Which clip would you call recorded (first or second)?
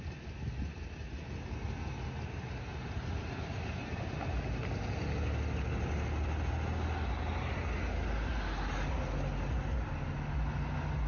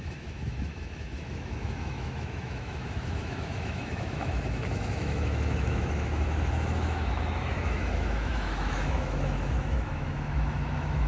first